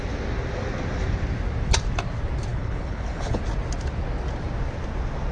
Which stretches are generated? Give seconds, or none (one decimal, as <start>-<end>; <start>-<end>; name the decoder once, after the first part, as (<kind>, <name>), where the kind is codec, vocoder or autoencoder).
2.5-3.4 (codec, HILCodec)